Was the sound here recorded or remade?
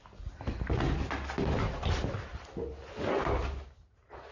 recorded